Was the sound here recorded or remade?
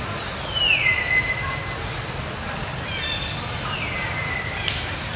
recorded